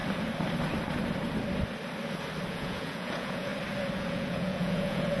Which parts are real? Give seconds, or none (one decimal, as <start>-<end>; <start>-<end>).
0.0-2.5; 3.5-4.0